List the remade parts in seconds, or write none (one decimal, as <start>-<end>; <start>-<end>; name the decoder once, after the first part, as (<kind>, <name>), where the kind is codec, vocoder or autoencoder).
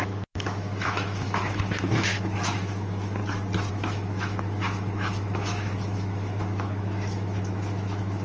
0.0-3.2 (autoencoder, DAC-VAE); 3.7-8.2